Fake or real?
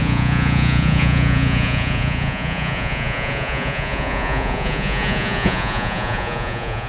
fake